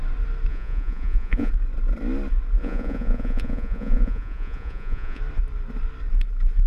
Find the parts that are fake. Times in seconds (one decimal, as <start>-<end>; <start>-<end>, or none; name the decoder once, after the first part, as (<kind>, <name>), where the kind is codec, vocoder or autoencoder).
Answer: 0.5-1.5 (vocoder, Vocos); 2.6-5.2

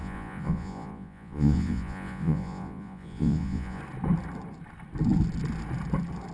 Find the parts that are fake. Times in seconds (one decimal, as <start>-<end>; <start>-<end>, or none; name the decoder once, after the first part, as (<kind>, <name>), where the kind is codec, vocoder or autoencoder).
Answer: 0.0-3.8 (vocoder, Vocos)

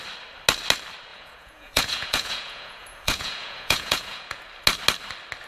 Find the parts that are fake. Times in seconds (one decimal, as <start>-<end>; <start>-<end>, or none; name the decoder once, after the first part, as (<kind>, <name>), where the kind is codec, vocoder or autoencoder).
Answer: 1.1-4.4 (vocoder, Vocos)

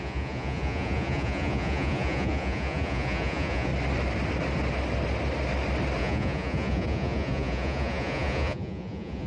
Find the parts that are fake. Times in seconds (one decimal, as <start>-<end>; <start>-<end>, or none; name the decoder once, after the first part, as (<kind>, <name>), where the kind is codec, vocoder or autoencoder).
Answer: 0.0-3.7 (vocoder, Vocos); 6.0-9.3